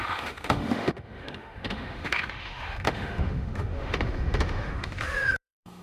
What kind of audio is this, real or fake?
fake